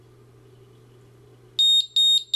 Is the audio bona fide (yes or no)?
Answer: yes